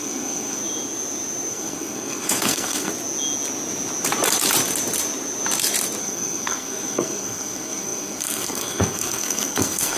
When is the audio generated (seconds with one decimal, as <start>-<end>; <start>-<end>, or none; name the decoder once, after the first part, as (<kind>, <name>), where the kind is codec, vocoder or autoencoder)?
0.0-0.6 (codec, SNAC); 1.5-2.9; 6.0-10.0